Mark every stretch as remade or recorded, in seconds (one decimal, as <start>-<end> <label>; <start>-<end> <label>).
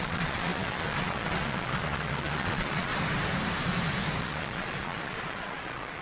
0.0-2.9 remade; 2.9-4.2 recorded; 4.2-6.0 remade